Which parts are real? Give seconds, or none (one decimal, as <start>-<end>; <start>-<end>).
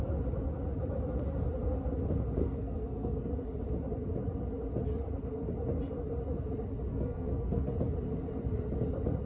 0.0-2.4; 3.3-6.9; 7.7-9.3